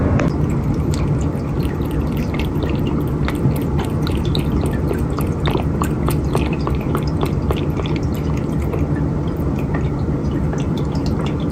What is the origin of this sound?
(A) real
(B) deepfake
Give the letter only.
B